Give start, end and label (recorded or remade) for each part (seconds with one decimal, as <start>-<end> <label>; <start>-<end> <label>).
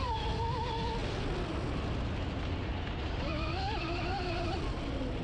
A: 0.0-1.0 recorded; 1.0-1.6 remade; 1.6-5.2 recorded